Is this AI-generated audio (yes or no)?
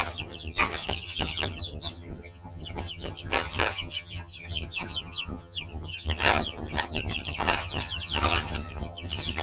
yes